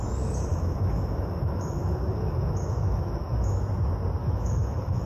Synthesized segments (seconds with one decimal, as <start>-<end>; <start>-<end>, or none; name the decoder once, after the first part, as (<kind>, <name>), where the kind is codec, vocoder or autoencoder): 0.5-3.6 (autoencoder, DAC-VAE); 4.2-5.1